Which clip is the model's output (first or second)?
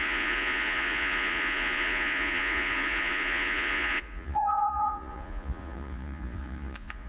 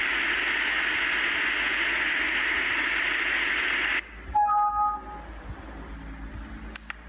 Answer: first